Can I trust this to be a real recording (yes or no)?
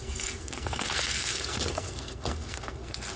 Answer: no